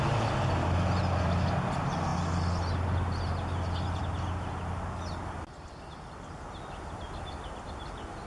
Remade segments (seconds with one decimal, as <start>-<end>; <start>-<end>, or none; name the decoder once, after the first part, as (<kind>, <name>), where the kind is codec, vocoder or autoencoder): none